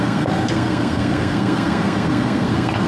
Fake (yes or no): yes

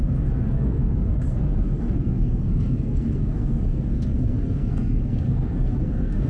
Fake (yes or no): yes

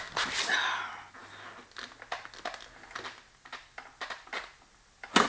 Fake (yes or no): no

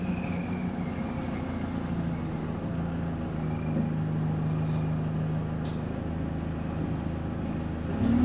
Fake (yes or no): no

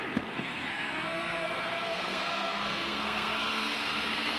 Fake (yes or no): yes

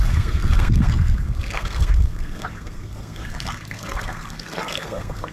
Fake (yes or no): yes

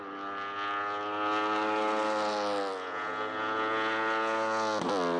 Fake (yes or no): no